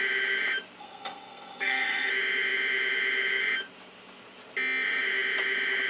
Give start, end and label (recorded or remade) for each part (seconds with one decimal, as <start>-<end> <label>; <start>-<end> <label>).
0.0-0.8 recorded; 0.8-2.1 remade; 2.1-5.9 recorded